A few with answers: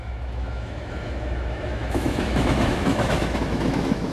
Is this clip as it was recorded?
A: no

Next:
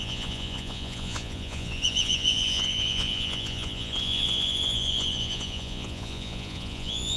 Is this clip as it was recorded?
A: no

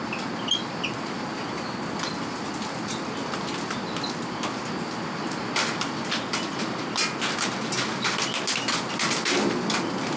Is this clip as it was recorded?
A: yes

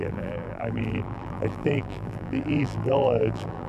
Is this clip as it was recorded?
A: no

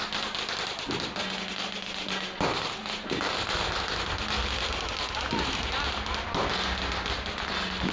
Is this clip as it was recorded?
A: yes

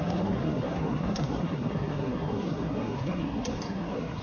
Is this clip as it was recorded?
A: no